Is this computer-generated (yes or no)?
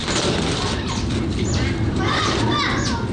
no